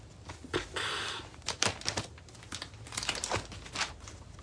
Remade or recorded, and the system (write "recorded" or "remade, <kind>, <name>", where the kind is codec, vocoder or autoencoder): recorded